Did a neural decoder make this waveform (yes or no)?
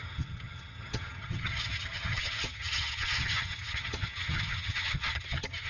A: yes